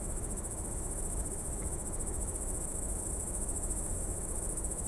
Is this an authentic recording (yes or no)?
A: no